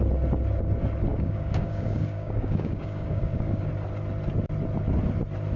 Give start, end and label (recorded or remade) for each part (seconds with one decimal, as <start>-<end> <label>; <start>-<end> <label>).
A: 0.0-1.1 recorded; 1.1-3.7 remade; 3.7-5.6 recorded